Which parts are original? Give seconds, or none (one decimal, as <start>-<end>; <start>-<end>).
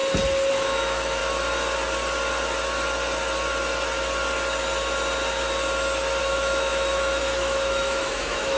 0.0-0.5; 1.2-6.2